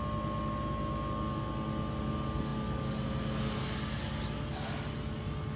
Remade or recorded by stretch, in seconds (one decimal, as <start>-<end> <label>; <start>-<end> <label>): 0.0-5.6 recorded